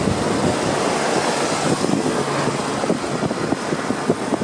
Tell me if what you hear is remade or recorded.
recorded